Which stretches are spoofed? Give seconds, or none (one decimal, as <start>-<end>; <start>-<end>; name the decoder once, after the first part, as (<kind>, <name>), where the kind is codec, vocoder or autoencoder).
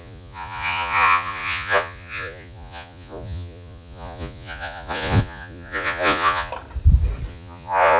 0.0-6.5 (vocoder, Vocos); 7.3-8.0